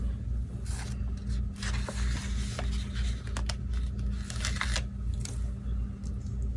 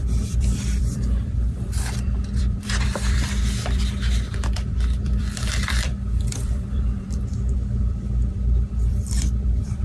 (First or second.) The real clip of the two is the first